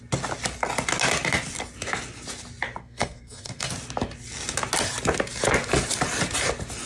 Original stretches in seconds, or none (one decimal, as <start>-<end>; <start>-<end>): 0.0-2.8; 3.7-6.9